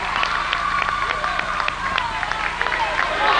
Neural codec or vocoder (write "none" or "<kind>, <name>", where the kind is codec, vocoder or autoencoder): none